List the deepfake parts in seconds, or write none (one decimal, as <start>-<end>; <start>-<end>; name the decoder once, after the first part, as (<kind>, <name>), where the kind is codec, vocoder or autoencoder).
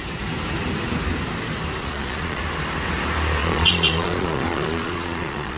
1.8-2.4 (vocoder, Vocos); 3.4-5.6